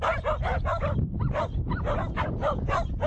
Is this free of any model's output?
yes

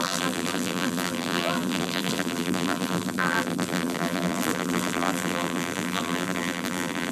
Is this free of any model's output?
no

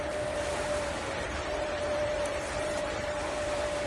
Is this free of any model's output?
no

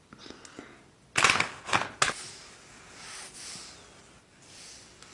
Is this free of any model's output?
yes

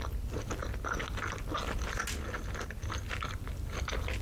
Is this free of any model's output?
yes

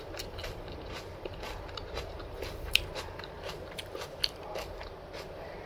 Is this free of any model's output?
no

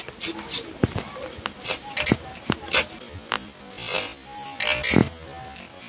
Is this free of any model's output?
yes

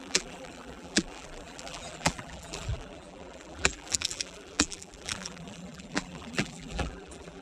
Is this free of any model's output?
no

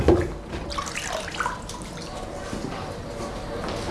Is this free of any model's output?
yes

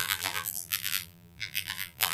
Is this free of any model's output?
no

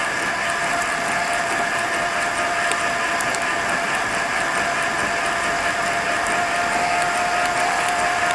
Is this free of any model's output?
yes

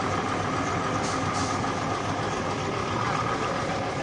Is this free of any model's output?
yes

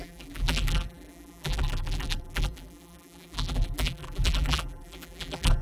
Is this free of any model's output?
no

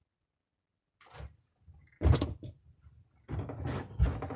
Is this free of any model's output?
yes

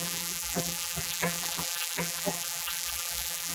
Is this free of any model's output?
no